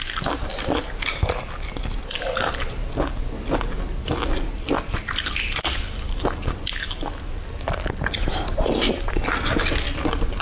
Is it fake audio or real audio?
real